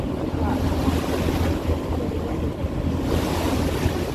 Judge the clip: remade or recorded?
recorded